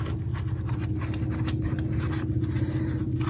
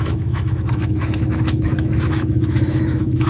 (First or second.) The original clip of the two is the first